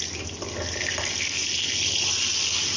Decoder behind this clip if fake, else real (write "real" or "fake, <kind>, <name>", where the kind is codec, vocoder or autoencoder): real